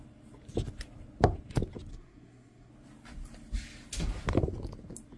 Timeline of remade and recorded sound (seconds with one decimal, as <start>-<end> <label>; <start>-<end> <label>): 0.0-1.9 recorded; 1.9-2.7 remade; 2.7-5.2 recorded